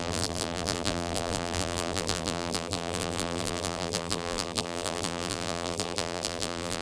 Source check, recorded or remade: remade